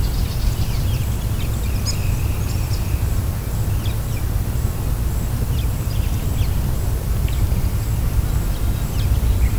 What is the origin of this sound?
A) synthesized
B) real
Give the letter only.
B